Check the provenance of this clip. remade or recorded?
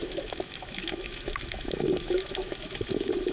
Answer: remade